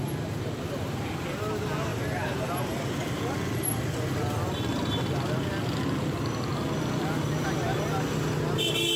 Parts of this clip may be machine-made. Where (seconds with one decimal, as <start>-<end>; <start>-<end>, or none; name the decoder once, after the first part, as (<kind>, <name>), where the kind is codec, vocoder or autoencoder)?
1.9-2.6 (vocoder, BigVGAN v2)